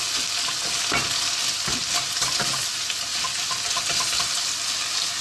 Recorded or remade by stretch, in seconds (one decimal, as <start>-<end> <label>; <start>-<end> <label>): 0.0-5.2 recorded